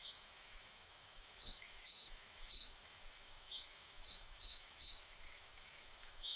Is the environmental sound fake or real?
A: fake